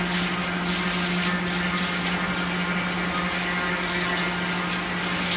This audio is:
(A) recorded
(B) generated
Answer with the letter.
A